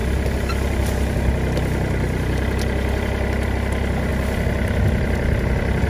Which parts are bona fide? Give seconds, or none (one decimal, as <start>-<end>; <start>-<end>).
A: 0.0-5.9